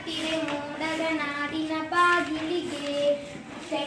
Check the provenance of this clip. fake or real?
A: real